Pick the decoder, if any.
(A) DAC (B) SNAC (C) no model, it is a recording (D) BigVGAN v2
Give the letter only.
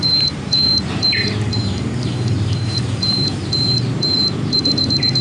D